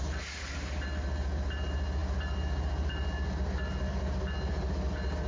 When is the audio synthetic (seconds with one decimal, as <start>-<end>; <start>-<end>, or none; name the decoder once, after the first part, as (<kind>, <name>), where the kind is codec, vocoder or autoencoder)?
none